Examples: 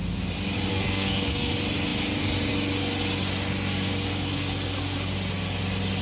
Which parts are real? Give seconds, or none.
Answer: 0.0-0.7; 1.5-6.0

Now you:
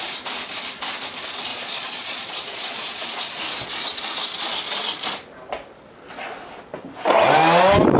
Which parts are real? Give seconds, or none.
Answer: 0.0-1.5; 3.3-8.0

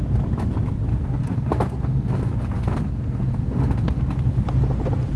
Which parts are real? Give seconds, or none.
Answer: 0.0-0.9; 4.0-5.2

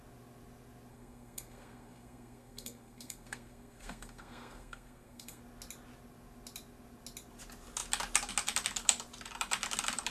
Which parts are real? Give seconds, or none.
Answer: 0.0-0.9; 5.4-10.1

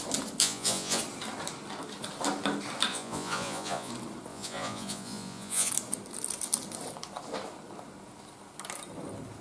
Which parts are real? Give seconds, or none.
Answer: 0.0-0.4; 1.0-2.9; 3.9-4.3; 5.7-9.4

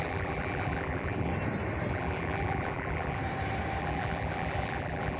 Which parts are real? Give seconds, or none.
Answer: 1.3-1.9; 3.2-3.8

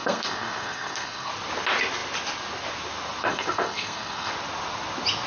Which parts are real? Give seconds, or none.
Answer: 1.3-3.2; 4.3-5.3